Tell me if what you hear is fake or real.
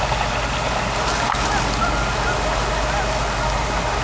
real